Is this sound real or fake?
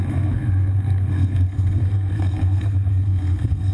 fake